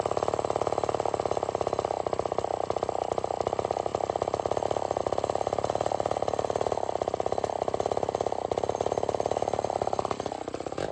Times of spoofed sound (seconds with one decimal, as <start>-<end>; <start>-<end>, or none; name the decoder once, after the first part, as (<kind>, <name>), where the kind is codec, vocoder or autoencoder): none